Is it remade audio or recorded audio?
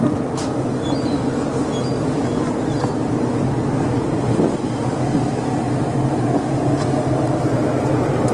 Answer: recorded